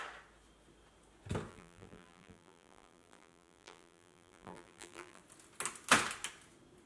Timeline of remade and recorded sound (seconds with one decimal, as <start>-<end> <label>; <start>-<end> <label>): 0.0-1.5 recorded; 1.5-5.2 remade; 5.2-6.9 recorded